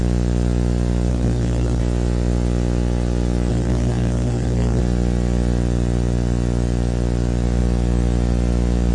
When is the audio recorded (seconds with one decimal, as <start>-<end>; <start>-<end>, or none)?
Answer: 0.0-1.1; 1.8-3.5; 4.8-8.9